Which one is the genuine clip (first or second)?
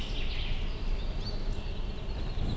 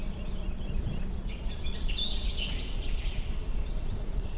first